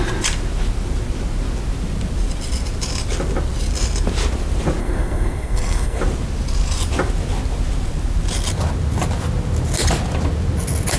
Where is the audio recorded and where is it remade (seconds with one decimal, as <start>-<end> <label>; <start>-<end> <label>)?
0.0-4.8 recorded; 4.8-6.0 remade; 6.0-11.0 recorded